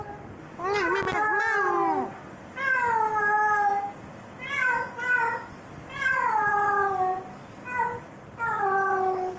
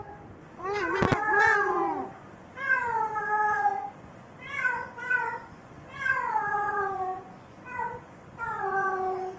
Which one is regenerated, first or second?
second